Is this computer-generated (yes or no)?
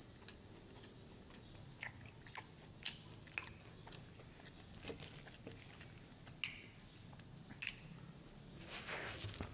no